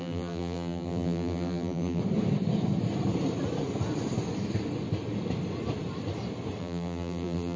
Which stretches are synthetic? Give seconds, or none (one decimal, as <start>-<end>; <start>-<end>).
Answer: 0.0-2.0; 6.6-7.6